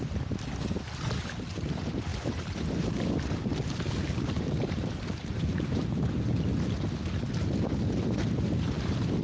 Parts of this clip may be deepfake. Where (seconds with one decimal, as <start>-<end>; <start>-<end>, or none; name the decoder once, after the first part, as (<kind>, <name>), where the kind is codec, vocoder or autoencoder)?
2.1-6.3 (vocoder, BigVGAN v2)